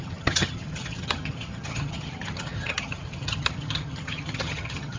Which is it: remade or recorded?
remade